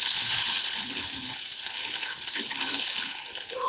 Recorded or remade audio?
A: remade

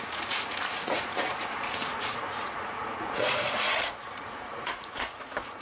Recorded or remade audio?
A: remade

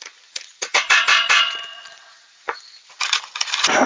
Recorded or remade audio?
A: remade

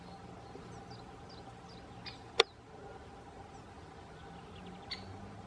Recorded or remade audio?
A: recorded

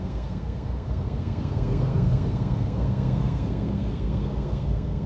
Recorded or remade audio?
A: remade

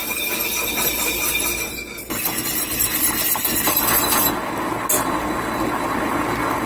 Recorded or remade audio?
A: recorded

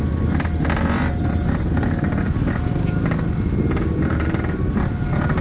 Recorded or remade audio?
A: recorded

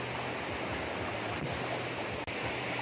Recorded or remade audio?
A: recorded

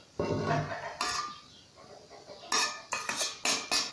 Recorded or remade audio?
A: recorded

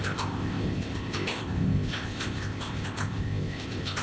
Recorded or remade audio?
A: remade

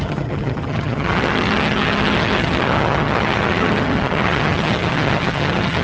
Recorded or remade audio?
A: remade